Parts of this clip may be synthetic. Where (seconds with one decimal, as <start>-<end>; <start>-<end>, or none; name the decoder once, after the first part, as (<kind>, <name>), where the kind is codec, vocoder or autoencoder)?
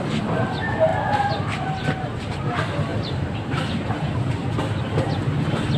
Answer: 0.9-2.3 (vocoder, BigVGAN v2); 2.9-4.2